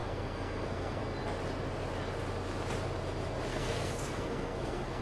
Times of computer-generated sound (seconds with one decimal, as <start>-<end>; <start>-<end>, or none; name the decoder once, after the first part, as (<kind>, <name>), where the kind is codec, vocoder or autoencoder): 0.0-1.0 (codec, SNAC); 3.5-5.0